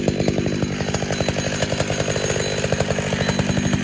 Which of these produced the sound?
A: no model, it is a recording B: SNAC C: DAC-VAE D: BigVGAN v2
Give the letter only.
A